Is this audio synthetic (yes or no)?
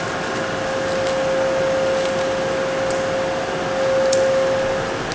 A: no